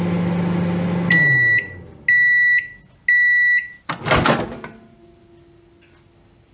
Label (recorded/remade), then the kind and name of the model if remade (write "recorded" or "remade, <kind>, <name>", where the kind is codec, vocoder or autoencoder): recorded